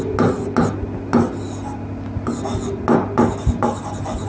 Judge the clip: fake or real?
real